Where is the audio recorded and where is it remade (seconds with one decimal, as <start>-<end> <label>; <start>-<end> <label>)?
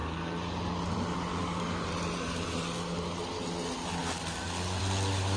0.0-1.3 recorded; 1.3-1.9 remade; 1.9-5.4 recorded